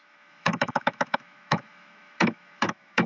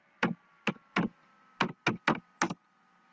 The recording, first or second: second